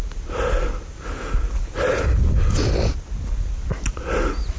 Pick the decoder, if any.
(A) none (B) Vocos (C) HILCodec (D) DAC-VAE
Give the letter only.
A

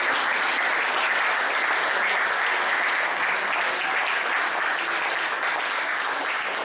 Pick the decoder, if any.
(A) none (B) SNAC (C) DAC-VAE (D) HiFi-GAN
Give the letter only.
A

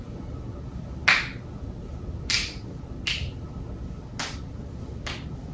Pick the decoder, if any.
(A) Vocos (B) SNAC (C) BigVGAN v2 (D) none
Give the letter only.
D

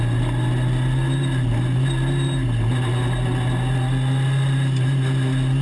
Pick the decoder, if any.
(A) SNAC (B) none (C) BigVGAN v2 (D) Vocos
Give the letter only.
B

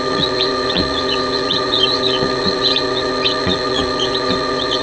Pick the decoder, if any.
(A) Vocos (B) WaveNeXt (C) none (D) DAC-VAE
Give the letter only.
B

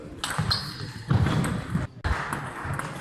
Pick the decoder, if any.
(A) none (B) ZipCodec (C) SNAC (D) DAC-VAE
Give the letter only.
A